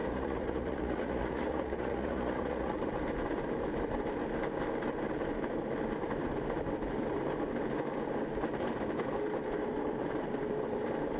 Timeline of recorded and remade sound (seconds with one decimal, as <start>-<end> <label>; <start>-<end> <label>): 0.0-2.8 remade; 2.8-11.2 recorded